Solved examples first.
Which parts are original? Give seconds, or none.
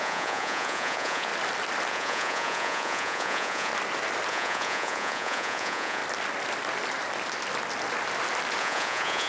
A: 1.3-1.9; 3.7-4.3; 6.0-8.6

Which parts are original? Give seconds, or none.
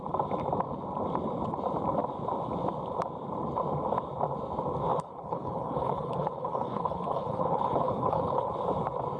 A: 0.0-4.9; 8.5-9.2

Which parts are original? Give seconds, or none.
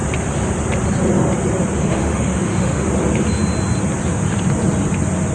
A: 0.0-1.8; 2.9-5.3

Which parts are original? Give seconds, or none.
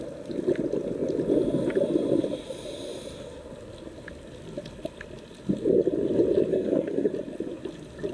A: 0.0-6.5; 7.1-8.1